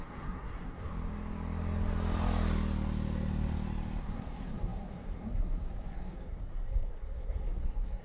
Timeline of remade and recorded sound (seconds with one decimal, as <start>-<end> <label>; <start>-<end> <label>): 0.0-0.9 remade; 0.9-4.0 recorded; 4.0-8.0 remade